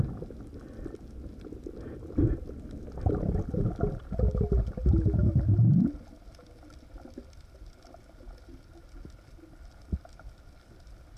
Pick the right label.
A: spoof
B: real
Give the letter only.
B